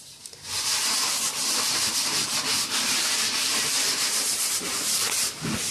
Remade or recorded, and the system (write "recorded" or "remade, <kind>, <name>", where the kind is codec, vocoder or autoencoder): remade, vocoder, BigVGAN v2